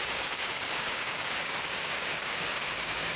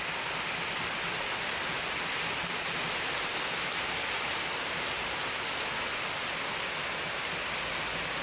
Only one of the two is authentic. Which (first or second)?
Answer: second